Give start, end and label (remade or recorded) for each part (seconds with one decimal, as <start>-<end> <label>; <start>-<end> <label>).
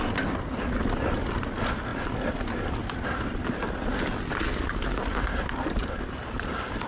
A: 0.0-6.9 recorded